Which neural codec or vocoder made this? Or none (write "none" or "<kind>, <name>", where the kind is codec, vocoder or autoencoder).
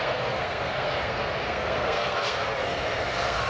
codec, SNAC